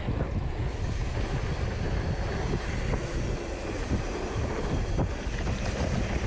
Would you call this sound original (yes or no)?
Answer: yes